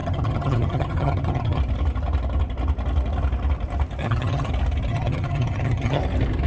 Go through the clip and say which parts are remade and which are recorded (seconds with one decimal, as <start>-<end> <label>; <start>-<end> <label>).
0.0-1.6 remade; 1.6-4.0 recorded; 4.0-4.5 remade; 4.5-4.9 recorded; 4.9-6.0 remade; 6.0-6.5 recorded